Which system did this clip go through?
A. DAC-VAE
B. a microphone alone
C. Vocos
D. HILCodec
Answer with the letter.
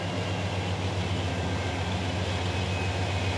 B